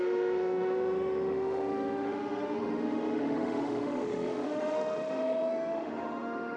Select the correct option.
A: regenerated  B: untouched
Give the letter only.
A